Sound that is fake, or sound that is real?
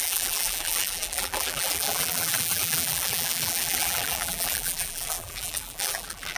fake